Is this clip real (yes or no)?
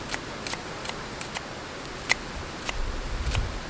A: yes